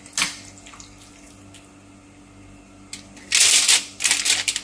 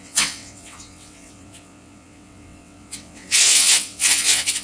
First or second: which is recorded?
first